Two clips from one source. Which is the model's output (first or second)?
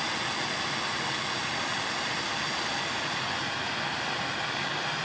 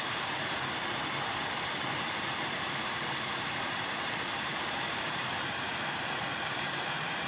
second